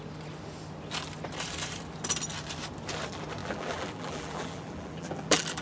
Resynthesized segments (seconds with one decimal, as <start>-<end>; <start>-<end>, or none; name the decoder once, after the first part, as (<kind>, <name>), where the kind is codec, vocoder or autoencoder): 3.4-5.6 (vocoder, BigVGAN v2)